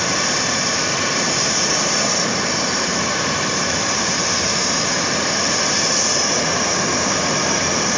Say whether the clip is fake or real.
fake